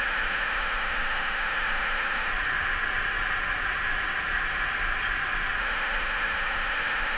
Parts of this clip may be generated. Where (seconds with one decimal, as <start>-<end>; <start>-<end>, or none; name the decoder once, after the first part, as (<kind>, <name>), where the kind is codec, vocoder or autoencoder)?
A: 0.0-2.3 (autoencoder, DAC-VAE); 5.6-7.2